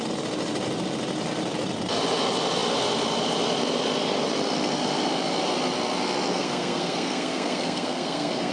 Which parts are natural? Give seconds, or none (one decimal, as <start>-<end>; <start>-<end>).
0.0-6.3